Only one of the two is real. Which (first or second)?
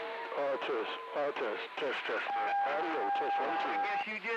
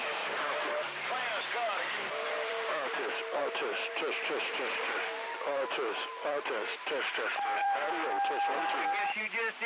first